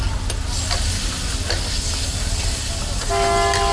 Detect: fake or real real